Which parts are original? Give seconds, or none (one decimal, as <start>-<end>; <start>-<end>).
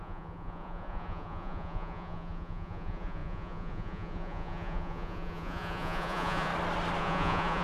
6.5-7.0